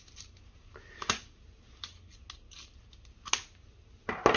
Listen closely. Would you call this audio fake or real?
real